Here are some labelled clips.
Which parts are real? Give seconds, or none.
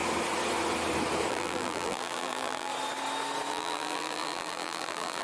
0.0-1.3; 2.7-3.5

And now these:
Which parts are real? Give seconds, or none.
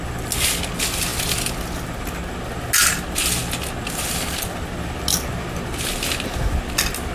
0.0-7.1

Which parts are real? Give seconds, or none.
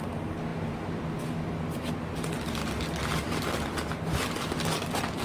0.0-5.2